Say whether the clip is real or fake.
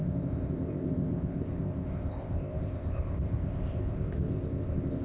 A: fake